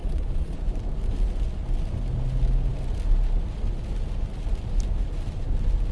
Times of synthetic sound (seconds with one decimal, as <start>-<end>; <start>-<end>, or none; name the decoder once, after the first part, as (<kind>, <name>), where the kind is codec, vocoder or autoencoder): 0.0-0.6 (vocoder, Vocos)